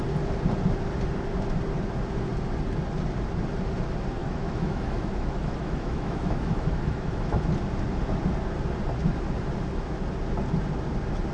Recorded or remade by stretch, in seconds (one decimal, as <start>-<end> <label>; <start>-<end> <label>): 0.0-4.2 recorded; 4.2-7.5 remade; 7.5-11.3 recorded